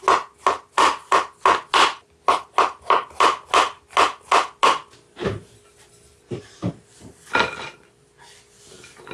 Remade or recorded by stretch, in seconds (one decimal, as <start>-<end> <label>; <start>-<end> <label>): 0.0-6.9 recorded; 6.9-8.0 remade; 8.0-9.1 recorded